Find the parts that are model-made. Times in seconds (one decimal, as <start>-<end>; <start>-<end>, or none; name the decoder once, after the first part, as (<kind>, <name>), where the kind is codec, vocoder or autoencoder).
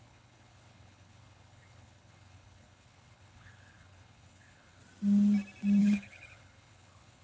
0.0-4.8 (codec, HILCodec); 5.8-7.2